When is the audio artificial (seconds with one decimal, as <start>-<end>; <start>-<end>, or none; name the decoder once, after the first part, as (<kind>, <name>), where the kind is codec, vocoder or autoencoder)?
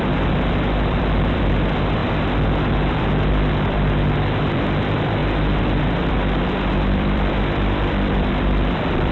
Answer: 0.0-2.0 (vocoder, BigVGAN v2); 2.7-5.2; 5.8-9.1